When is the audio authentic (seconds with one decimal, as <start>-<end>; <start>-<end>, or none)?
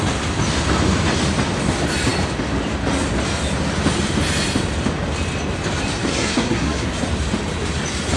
0.0-6.1; 6.9-8.2